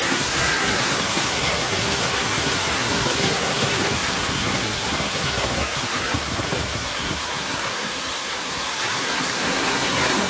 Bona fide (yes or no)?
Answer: no